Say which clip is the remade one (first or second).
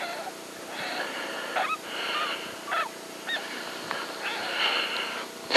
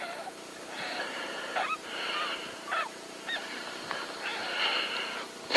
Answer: second